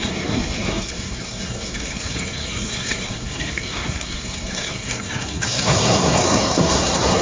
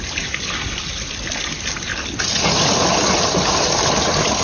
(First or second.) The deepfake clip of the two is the first